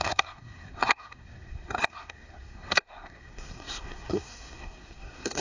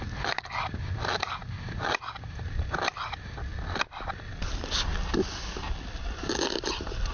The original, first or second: second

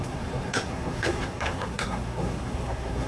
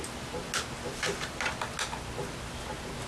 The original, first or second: second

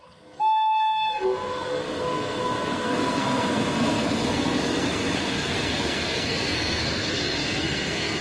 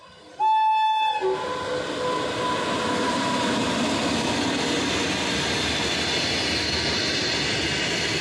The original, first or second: second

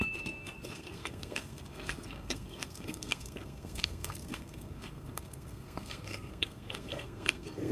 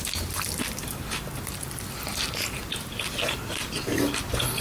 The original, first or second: second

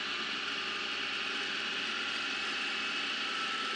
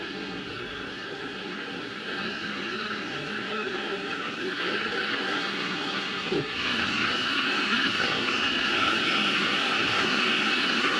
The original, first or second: first